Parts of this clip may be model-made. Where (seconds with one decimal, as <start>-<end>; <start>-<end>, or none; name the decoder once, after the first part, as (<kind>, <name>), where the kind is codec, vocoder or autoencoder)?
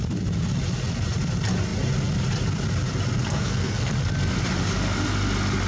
3.2-3.9 (codec, SNAC)